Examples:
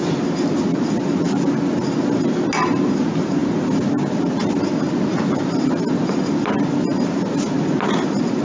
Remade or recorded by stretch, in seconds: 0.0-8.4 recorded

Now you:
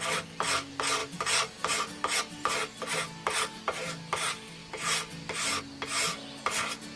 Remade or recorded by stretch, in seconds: 0.0-7.0 recorded

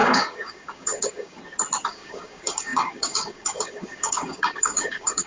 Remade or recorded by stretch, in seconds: 0.0-1.4 remade; 1.4-1.9 recorded; 1.9-5.3 remade

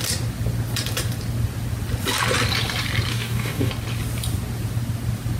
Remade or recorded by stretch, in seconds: 0.0-3.1 recorded; 3.1-3.7 remade; 3.7-5.4 recorded

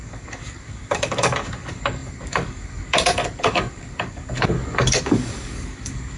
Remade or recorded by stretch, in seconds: 0.0-6.2 remade

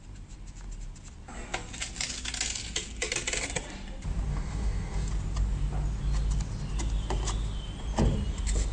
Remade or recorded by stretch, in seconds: 0.0-4.3 recorded; 4.3-5.1 remade; 5.1-8.7 recorded

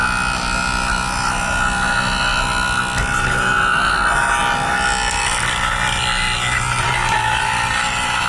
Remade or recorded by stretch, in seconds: 0.0-8.3 recorded

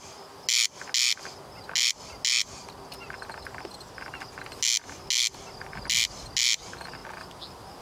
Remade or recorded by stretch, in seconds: 0.0-7.8 recorded